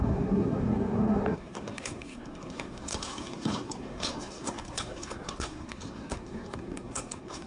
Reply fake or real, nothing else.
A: fake